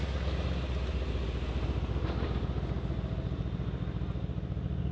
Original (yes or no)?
yes